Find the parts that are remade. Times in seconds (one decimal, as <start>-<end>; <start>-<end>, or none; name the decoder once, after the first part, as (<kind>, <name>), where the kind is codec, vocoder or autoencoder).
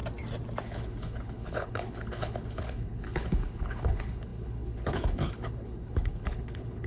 0.6-6.9 (codec, HILCodec)